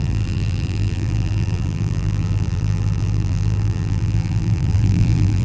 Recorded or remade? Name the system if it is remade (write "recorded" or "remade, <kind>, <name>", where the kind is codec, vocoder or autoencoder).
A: remade, vocoder, BigVGAN v2